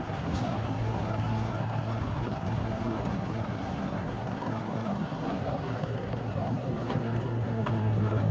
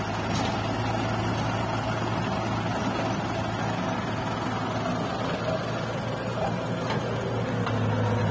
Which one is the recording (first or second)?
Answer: second